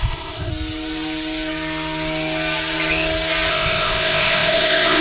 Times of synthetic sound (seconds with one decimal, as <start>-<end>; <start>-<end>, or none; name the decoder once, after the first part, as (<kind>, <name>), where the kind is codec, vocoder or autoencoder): 0.0-0.5 (codec, ZipCodec); 3.5-5.0